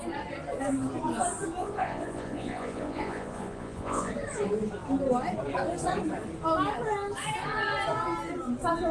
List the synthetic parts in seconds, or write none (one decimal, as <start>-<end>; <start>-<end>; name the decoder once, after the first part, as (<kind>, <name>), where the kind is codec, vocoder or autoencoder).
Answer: 1.6-4.1 (vocoder, Vocos)

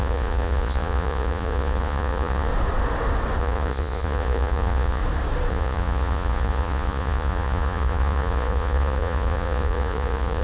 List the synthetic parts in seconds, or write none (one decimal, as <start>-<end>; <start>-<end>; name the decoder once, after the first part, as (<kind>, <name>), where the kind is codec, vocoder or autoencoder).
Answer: 0.0-2.5 (vocoder, Vocos); 3.4-5.0; 5.5-10.4

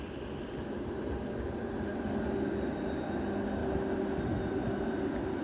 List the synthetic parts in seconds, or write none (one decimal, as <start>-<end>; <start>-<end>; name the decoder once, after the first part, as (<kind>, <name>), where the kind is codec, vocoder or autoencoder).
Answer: none

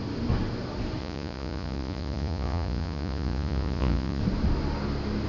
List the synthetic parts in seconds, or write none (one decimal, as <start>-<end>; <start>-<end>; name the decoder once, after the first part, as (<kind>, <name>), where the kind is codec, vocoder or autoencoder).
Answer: 1.0-4.2 (vocoder, Vocos)

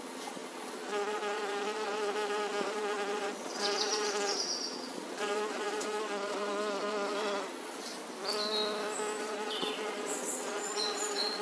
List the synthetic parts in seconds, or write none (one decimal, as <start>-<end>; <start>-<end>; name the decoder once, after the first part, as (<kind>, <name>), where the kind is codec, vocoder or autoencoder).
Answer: 0.0-7.9 (vocoder, Vocos); 9.2-11.4

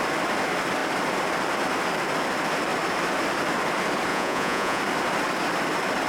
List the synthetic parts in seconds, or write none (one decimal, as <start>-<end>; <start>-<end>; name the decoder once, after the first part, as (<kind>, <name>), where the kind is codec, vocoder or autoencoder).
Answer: 4.1-4.8 (vocoder, Vocos)